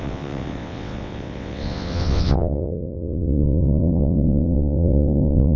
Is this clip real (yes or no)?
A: no